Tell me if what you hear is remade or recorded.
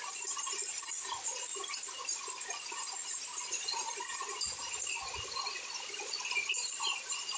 recorded